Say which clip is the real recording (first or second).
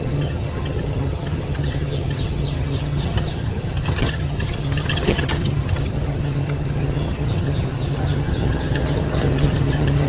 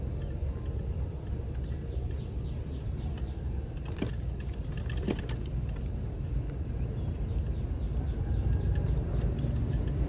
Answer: second